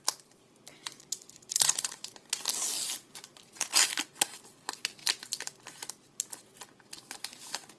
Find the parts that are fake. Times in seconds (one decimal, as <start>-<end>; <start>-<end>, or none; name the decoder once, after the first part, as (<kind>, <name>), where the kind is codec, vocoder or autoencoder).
0.8-2.1 (vocoder, Vocos)